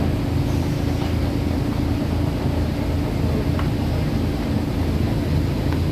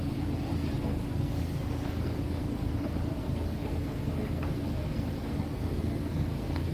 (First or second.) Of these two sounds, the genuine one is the first